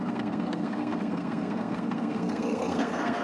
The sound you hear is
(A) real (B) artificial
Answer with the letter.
B